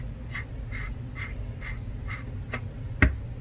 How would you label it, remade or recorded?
recorded